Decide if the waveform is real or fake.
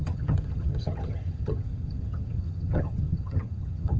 fake